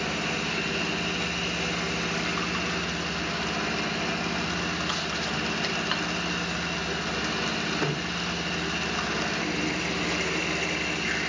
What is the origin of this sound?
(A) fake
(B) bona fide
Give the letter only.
B